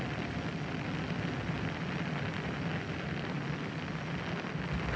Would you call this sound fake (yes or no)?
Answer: no